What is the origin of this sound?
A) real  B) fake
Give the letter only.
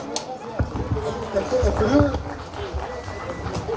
A